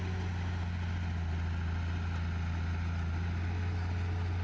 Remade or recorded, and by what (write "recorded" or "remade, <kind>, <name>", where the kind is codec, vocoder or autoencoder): recorded